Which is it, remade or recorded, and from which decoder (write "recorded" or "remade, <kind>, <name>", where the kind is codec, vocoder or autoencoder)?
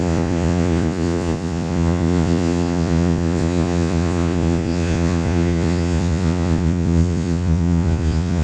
remade, vocoder, Vocos